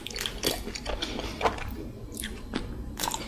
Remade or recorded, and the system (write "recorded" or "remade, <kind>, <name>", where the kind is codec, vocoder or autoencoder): recorded